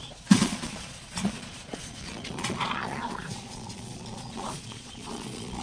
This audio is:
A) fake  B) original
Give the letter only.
A